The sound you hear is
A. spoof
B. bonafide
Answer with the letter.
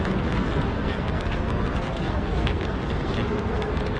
A